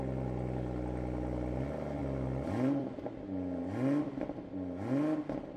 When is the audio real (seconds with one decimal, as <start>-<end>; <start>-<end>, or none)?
0.0-5.6